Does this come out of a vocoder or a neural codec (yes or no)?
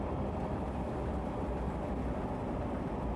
no